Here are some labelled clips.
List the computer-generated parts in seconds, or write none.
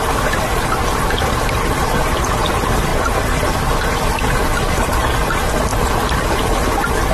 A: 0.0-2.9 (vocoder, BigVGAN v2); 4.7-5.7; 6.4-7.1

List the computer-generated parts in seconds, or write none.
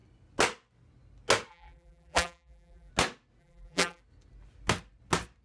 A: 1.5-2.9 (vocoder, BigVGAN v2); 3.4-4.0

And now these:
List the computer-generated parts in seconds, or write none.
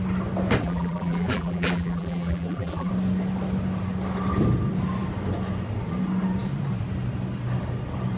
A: 0.6-2.9 (vocoder, BigVGAN v2)